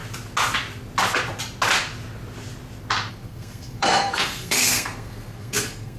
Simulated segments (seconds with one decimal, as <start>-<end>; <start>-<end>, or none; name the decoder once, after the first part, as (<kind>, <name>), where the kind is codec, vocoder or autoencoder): 3.1-6.0 (codec, SNAC)